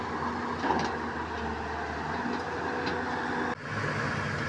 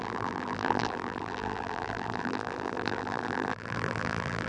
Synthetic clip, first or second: second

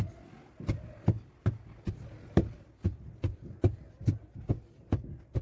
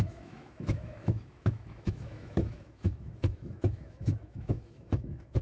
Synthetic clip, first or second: second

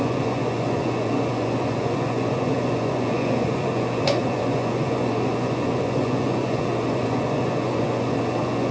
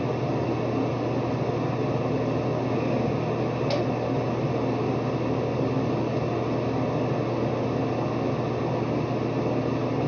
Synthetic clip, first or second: first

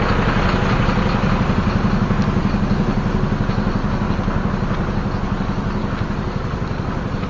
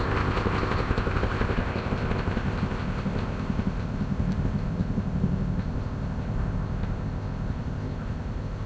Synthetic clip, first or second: second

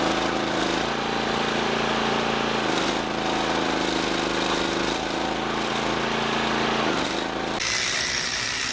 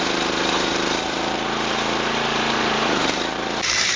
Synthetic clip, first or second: second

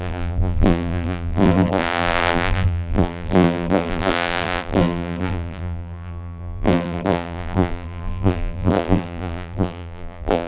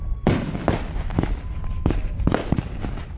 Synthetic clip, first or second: first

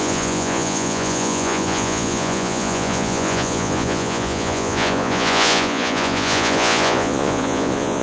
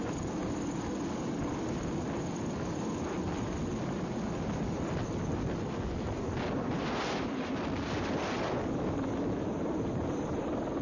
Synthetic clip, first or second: first